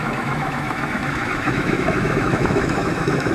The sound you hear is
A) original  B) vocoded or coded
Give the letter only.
B